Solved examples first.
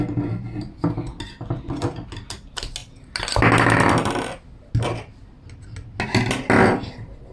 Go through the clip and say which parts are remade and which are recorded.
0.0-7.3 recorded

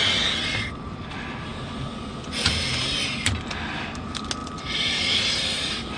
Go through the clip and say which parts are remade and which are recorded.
0.0-6.0 recorded

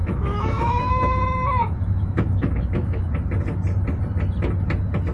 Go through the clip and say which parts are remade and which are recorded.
0.0-3.1 remade; 3.1-5.1 recorded

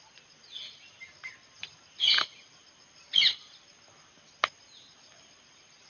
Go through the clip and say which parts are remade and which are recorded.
0.0-5.9 recorded